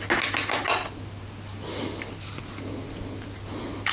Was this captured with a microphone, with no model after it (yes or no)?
yes